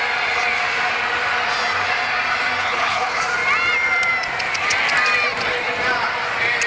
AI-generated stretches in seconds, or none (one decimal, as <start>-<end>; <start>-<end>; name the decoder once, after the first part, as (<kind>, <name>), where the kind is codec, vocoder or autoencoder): 2.6-3.2 (codec, HILCodec)